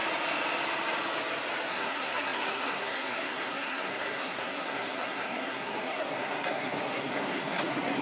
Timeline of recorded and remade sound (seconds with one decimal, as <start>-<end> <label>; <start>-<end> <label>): 0.0-1.7 recorded; 1.7-8.0 remade